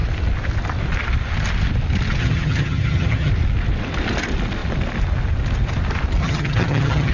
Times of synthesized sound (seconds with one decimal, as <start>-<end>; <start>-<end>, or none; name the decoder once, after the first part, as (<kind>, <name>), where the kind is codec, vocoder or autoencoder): 2.2-3.3 (vocoder, HiFi-GAN); 6.2-7.1